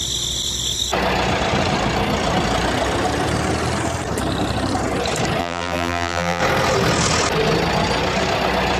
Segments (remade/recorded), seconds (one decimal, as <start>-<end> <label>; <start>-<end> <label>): 0.0-5.4 recorded; 5.4-6.4 remade; 6.4-8.8 recorded